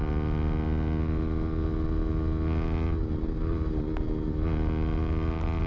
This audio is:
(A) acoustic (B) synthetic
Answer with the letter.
A